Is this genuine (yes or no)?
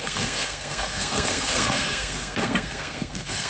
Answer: no